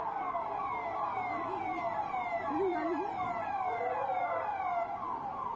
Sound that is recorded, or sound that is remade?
recorded